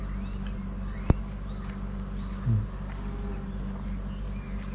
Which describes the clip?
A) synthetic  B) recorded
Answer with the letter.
B